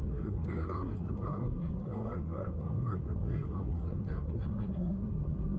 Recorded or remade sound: remade